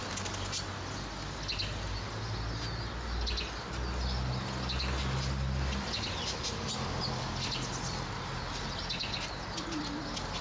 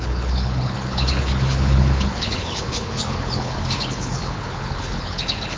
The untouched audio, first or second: first